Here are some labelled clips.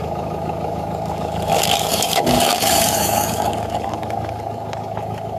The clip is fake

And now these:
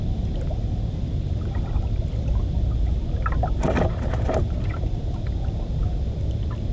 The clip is real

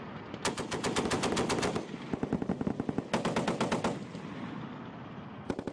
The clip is real